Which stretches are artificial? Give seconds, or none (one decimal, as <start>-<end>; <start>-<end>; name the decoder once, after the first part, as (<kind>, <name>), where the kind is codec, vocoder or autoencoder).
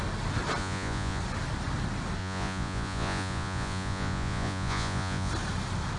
0.6-1.2 (vocoder, Vocos); 2.2-5.3